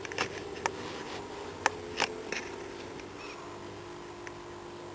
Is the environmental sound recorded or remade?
recorded